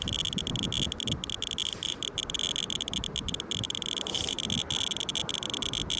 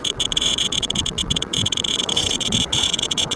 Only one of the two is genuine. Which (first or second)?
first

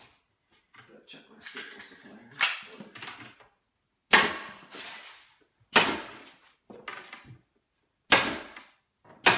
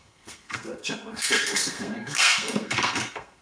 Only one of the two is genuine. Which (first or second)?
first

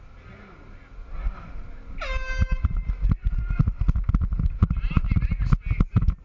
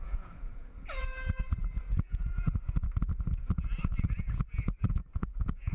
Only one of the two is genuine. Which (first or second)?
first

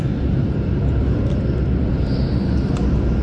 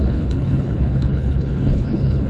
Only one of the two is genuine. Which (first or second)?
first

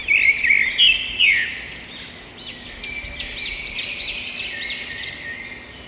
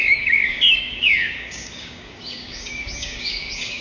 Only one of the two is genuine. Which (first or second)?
first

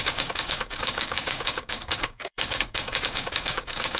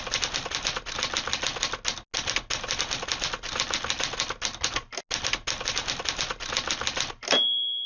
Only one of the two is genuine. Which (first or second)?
second